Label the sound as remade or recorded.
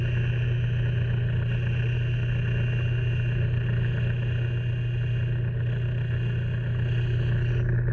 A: recorded